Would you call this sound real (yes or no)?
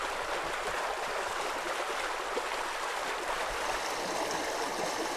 yes